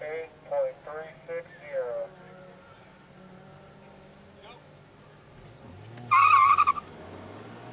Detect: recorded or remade recorded